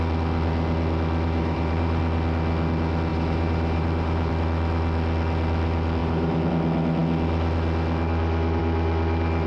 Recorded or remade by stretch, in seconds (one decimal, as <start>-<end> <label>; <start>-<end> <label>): 0.0-1.4 recorded; 1.4-2.0 remade; 2.0-3.1 recorded; 3.1-4.3 remade; 4.3-6.0 recorded; 6.0-6.5 remade; 6.5-9.5 recorded